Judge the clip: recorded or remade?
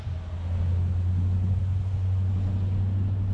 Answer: recorded